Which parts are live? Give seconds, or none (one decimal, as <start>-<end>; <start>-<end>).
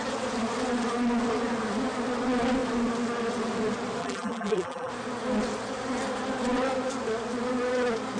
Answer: 0.0-4.0; 4.9-8.2